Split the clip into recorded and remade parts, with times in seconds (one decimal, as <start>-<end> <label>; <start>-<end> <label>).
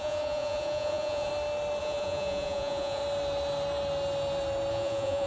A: 0.0-1.3 remade; 1.3-1.8 recorded; 1.8-3.0 remade; 3.0-4.7 recorded; 4.7-5.3 remade